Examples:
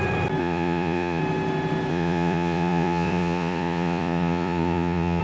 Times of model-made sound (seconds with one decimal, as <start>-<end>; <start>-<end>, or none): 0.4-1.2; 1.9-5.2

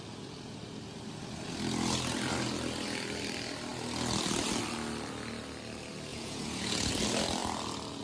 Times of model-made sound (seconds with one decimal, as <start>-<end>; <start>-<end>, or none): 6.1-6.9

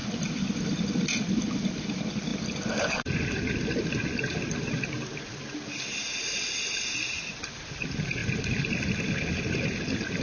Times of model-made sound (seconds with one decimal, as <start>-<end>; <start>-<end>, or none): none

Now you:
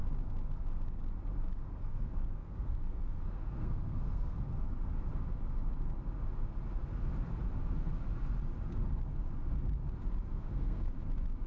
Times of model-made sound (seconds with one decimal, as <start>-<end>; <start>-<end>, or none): 1.8-4.4; 10.3-10.9

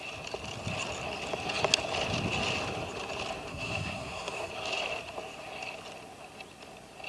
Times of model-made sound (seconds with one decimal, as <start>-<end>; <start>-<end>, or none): 3.5-4.5

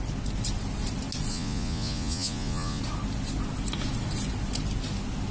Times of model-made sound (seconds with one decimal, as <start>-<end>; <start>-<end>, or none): 1.3-2.8

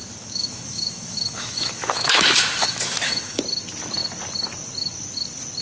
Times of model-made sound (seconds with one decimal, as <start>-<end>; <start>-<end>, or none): 0.0-3.4